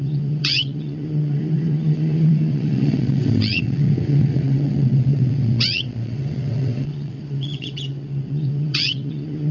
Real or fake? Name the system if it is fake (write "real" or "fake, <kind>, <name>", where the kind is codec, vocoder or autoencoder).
fake, vocoder, WaveNeXt